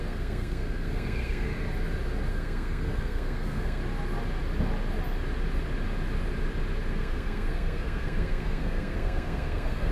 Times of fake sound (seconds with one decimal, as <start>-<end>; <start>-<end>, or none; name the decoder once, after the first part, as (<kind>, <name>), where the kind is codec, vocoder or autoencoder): 0.0-1.5 (codec, SNAC); 2.3-3.8; 6.9-9.9